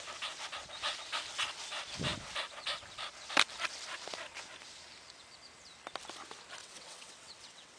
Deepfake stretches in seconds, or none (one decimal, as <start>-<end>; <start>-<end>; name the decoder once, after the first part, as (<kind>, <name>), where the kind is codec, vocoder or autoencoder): 6.6-7.8 (vocoder, WaveNeXt)